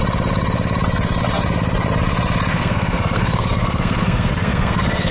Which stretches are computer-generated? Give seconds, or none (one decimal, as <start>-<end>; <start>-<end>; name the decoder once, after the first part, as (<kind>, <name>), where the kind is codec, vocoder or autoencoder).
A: 2.5-5.1 (codec, SNAC)